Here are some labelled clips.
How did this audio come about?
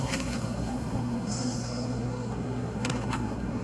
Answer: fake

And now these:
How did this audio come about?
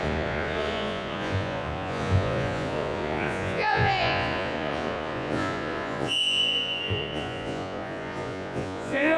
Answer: fake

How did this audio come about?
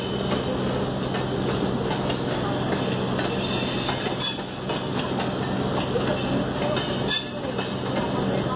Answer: real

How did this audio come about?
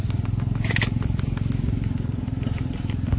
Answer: real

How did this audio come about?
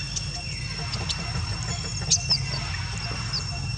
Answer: real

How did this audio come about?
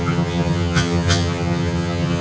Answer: fake